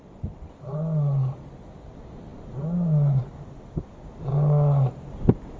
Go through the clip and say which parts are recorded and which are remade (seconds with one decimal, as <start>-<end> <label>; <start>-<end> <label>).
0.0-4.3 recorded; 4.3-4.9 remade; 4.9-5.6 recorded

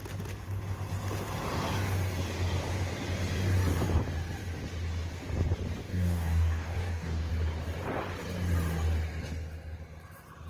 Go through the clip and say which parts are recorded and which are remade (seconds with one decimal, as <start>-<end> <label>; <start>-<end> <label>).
0.0-5.8 recorded; 5.8-7.3 remade; 7.3-10.5 recorded

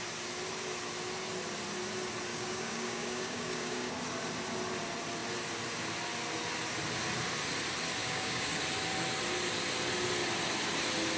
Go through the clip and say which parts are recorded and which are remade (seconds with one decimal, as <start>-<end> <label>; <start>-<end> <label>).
0.0-2.3 recorded; 2.3-3.9 remade; 3.9-8.0 recorded; 8.0-8.6 remade; 8.6-11.2 recorded